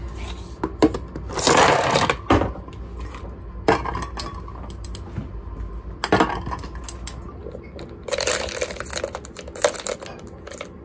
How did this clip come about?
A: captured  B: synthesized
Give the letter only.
A